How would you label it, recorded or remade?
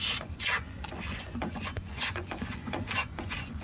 remade